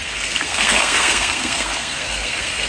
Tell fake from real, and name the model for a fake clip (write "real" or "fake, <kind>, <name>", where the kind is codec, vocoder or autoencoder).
fake, codec, SNAC